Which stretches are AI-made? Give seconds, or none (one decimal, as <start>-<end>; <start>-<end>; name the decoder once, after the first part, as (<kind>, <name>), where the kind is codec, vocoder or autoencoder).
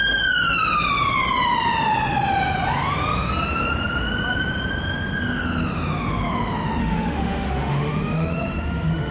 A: 6.8-9.1 (autoencoder, DAC-VAE)